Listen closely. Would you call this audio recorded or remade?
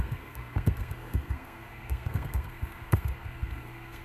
remade